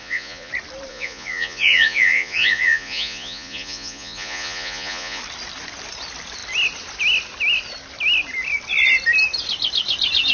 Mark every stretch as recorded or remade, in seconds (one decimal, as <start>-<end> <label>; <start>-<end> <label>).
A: 0.0-0.5 remade; 0.5-0.9 recorded; 0.9-5.2 remade; 5.2-10.3 recorded